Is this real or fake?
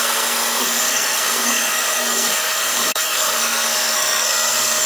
fake